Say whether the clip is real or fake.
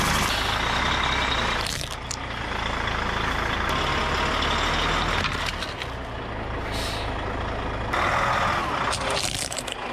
real